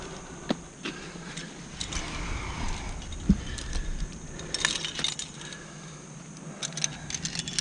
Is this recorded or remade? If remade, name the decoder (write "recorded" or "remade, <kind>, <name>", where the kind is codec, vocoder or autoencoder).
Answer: recorded